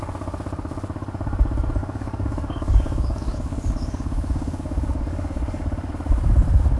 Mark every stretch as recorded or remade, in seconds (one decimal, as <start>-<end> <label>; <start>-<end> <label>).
0.0-1.8 recorded; 1.8-5.9 remade; 5.9-6.8 recorded